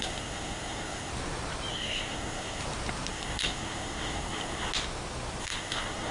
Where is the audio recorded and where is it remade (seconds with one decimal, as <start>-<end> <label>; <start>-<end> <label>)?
0.0-1.1 remade; 1.1-1.7 recorded; 1.7-2.6 remade; 2.6-3.1 recorded; 3.1-4.7 remade; 4.7-5.4 recorded; 5.4-6.1 remade

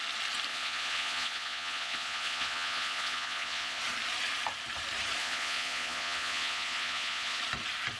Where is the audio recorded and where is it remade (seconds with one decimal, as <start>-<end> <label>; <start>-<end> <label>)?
0.0-0.5 recorded; 0.5-3.8 remade; 3.8-5.2 recorded; 5.2-7.4 remade; 7.4-8.0 recorded

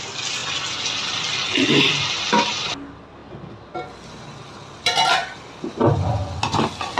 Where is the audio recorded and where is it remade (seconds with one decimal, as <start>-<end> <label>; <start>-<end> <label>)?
0.0-7.0 recorded

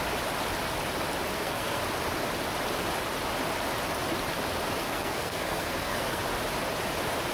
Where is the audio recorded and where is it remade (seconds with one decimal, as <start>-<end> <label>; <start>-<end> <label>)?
0.0-1.3 recorded; 1.3-1.8 remade; 1.8-4.8 recorded; 4.8-6.2 remade; 6.2-7.3 recorded